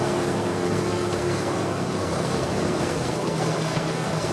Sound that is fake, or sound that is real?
fake